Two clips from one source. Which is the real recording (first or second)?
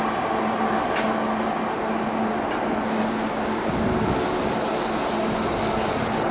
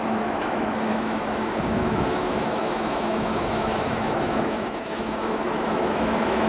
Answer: first